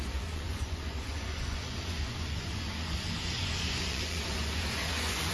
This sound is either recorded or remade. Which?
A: remade